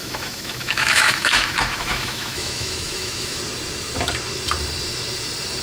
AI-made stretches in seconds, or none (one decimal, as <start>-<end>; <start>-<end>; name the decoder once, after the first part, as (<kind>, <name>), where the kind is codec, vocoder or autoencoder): 0.0-3.4 (autoencoder, DAC-VAE)